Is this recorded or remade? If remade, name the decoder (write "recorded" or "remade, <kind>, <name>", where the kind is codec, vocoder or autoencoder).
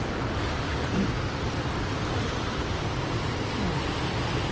recorded